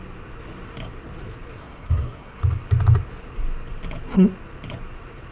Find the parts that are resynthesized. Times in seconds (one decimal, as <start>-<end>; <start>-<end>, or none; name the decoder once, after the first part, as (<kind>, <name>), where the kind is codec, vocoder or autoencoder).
1.6-2.4 (codec, SNAC)